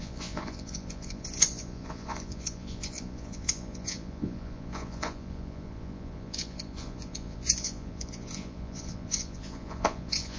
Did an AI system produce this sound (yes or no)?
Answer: yes